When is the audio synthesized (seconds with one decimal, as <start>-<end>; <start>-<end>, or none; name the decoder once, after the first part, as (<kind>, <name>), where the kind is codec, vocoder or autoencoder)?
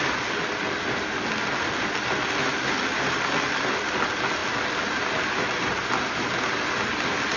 none